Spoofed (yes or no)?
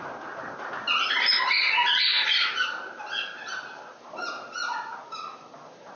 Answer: no